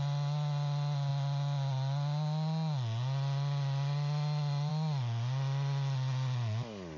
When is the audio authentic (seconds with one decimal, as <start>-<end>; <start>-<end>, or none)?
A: 0.0-7.0